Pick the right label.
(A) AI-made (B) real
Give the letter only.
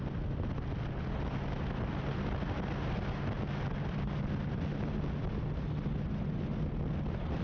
B